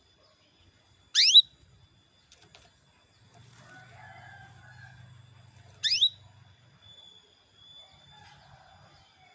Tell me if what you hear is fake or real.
real